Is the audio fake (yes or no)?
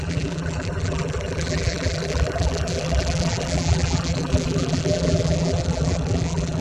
yes